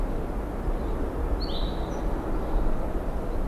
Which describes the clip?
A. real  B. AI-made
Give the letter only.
A